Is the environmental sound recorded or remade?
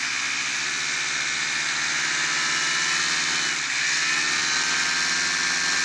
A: recorded